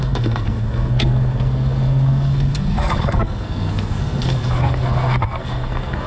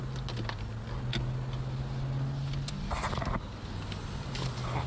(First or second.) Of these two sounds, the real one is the second